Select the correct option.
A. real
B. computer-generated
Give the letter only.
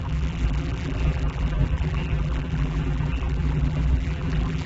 B